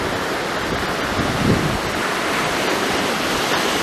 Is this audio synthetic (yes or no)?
no